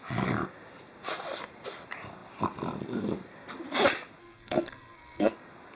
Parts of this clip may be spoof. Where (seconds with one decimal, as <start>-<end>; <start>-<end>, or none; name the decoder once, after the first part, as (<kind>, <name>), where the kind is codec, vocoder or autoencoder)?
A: 4.2-5.3 (codec, SNAC)